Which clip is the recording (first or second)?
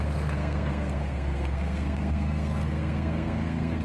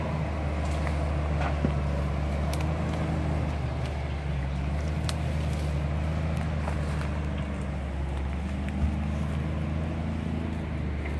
second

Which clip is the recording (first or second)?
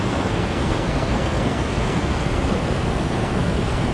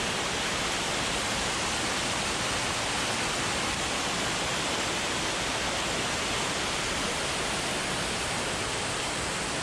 second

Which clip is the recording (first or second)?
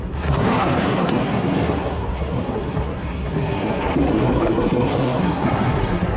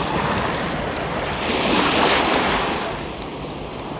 second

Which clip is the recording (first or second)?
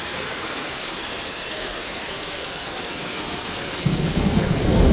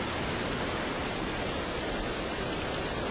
second